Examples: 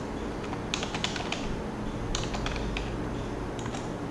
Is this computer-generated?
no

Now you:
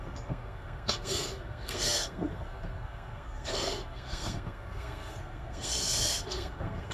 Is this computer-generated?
yes